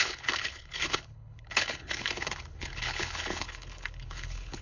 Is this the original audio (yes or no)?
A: no